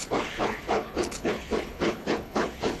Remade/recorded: remade